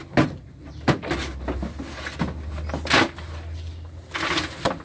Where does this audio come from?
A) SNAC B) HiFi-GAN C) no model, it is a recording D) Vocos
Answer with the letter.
C